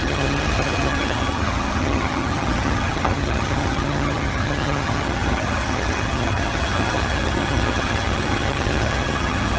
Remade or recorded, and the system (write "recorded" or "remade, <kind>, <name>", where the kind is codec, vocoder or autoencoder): remade, vocoder, HiFi-GAN